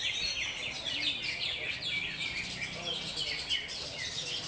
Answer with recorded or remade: recorded